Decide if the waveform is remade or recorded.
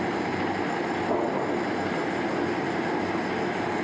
recorded